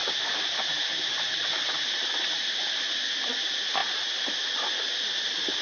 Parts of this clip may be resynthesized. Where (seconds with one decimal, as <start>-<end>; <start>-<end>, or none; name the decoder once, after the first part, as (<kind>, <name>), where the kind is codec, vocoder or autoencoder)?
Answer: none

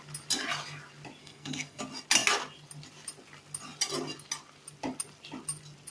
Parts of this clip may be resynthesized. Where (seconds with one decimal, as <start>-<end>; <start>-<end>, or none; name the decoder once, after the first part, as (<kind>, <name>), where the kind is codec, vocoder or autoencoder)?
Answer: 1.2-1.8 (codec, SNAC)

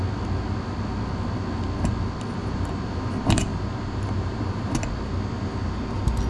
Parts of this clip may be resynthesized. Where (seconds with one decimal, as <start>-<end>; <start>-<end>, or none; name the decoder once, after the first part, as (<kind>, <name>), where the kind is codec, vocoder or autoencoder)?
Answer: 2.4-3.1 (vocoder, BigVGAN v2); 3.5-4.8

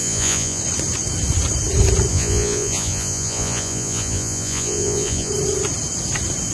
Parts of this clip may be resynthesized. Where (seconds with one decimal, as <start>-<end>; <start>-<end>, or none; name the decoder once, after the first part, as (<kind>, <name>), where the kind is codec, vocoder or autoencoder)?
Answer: 0.0-0.6 (vocoder, Vocos); 2.1-5.3

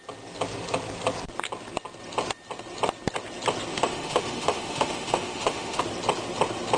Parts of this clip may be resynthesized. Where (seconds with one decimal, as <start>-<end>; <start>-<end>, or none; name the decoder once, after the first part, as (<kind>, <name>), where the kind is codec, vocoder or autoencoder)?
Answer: 3.7-5.8 (autoencoder, DAC-VAE)

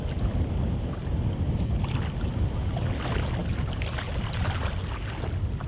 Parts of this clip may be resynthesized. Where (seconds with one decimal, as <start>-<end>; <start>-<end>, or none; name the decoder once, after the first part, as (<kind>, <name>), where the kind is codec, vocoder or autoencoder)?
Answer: 3.4-4.8 (vocoder, BigVGAN v2)